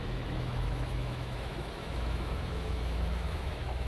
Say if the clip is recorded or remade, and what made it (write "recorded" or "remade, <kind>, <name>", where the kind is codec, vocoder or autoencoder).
remade, autoencoder, DAC-VAE